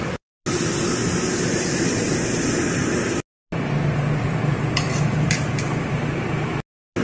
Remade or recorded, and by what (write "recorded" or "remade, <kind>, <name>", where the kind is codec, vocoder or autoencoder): recorded